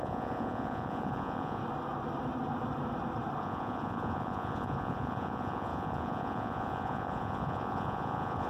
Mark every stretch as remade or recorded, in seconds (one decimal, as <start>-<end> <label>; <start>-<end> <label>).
0.0-1.6 remade; 1.6-3.4 recorded; 3.4-8.5 remade